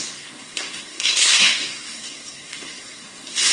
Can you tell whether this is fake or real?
fake